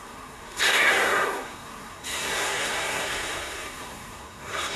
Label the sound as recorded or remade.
remade